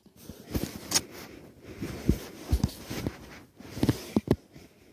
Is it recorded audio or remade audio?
recorded